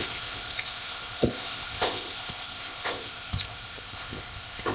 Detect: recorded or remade remade